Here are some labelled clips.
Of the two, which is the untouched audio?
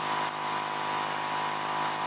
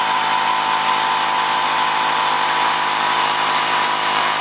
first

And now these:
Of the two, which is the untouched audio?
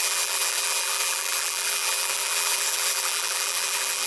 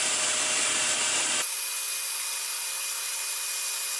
second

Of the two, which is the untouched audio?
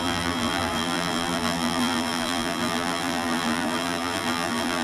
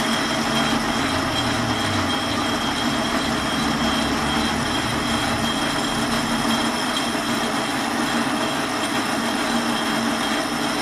second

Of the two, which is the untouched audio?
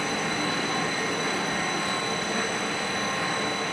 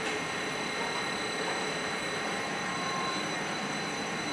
first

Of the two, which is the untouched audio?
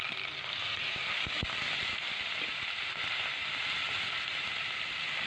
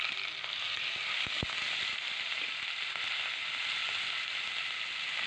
second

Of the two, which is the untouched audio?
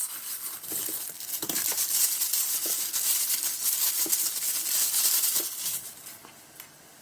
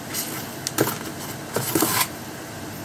second